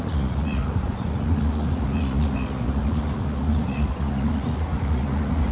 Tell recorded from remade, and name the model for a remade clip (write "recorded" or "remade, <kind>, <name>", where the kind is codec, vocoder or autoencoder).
remade, vocoder, Vocos